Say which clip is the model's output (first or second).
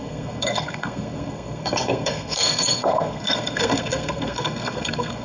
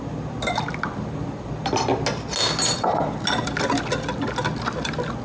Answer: first